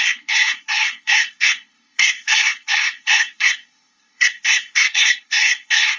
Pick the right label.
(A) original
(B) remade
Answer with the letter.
B